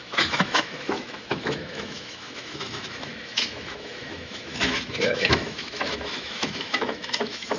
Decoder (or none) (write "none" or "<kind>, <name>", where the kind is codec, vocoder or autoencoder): autoencoder, DAC-VAE